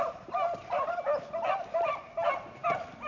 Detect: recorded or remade recorded